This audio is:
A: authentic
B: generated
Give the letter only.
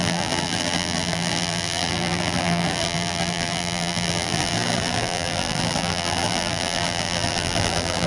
B